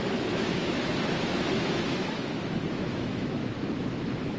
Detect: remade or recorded remade